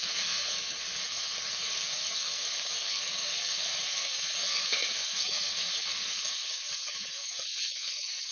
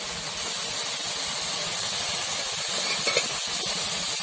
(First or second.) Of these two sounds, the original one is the second